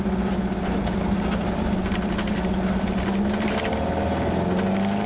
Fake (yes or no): no